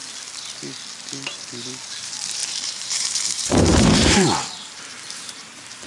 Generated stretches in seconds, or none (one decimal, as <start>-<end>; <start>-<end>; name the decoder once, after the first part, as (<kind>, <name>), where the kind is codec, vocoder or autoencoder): 2.0-5.9 (vocoder, BigVGAN v2)